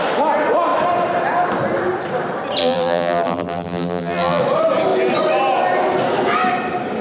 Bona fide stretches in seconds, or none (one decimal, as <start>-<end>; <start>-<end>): 0.0-2.6; 4.4-7.0